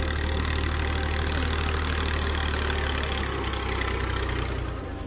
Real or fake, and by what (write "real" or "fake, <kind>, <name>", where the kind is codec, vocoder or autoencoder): real